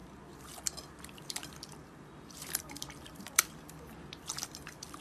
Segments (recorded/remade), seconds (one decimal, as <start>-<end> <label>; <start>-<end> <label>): 0.0-5.0 remade